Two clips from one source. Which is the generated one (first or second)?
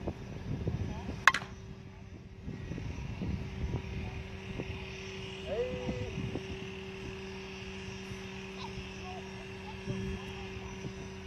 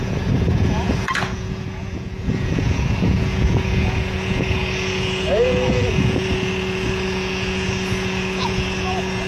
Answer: second